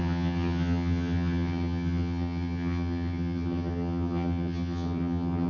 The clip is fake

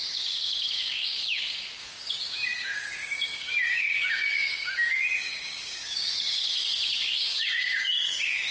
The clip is fake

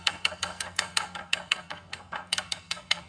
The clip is fake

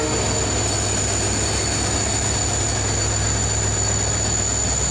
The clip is real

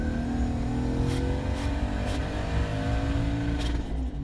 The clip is real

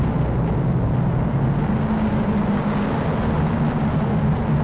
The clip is real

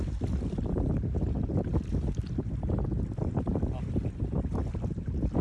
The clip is real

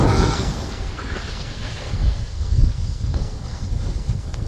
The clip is fake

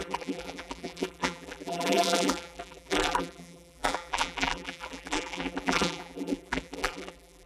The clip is fake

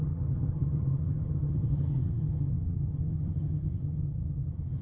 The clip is fake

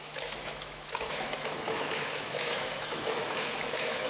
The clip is fake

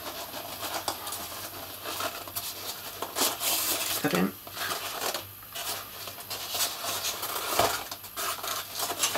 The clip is real